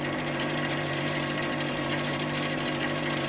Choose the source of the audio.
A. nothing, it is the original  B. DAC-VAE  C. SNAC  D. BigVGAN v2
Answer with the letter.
D